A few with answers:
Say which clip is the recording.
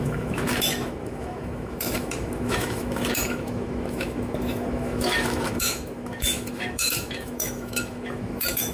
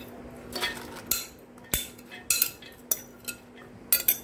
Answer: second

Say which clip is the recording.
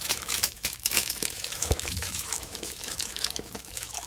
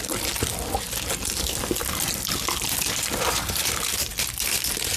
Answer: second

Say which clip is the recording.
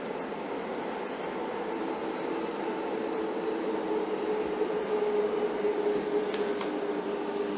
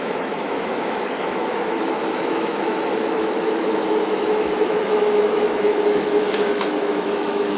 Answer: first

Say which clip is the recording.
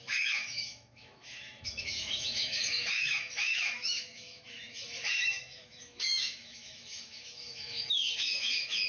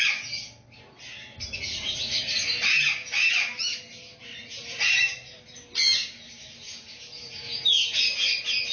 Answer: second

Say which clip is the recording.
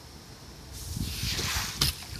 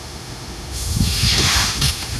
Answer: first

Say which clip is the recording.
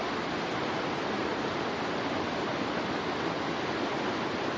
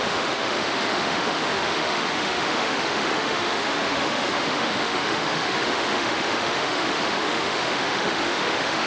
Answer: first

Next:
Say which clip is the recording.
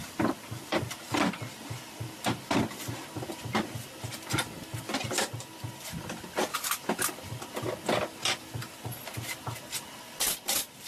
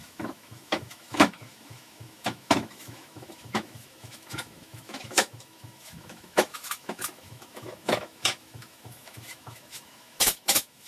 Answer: first